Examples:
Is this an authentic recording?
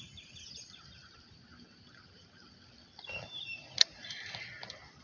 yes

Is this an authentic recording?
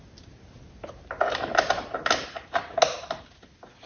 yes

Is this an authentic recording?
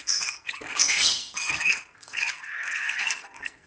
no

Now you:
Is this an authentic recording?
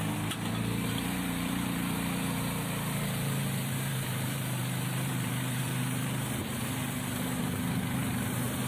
no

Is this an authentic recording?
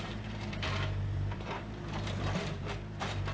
no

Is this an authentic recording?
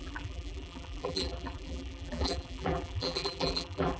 no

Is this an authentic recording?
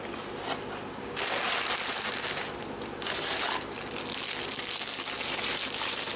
yes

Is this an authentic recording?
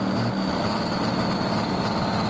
yes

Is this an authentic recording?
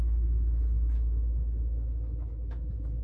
no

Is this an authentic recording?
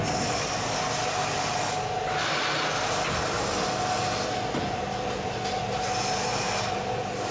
yes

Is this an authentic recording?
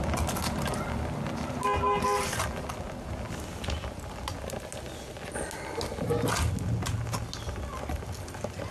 yes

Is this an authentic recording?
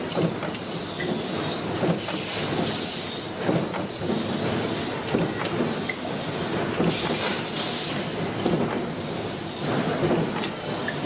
yes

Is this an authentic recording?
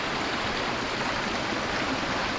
yes